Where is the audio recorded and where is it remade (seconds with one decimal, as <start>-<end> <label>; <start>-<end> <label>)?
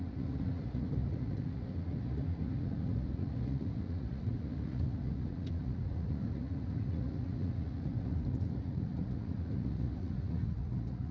0.0-11.1 remade